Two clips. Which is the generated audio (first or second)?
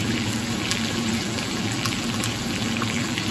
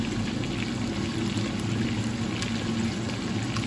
first